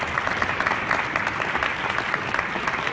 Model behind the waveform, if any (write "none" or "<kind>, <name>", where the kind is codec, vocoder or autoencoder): none